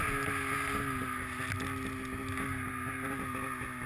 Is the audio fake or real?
real